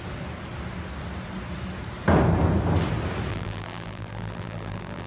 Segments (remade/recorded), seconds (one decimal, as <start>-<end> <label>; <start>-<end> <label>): 0.0-3.3 recorded; 3.3-5.1 remade